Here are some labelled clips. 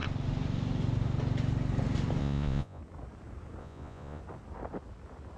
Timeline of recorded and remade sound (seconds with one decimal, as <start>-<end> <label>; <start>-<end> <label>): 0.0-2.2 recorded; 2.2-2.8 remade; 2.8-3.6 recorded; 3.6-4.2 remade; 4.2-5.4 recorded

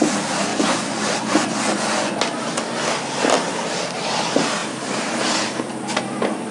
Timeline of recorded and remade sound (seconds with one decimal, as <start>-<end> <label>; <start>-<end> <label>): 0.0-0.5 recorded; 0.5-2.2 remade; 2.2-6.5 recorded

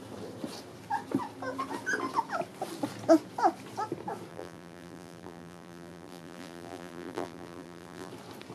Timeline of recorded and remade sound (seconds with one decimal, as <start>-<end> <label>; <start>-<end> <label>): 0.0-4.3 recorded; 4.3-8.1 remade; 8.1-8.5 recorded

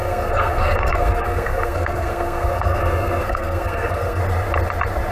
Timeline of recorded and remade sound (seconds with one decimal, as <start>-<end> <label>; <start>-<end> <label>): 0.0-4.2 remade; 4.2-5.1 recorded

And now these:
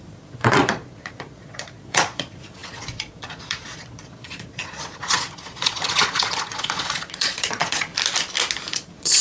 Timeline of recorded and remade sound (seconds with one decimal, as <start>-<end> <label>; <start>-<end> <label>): 0.0-7.9 remade; 7.9-8.7 recorded; 8.7-9.2 remade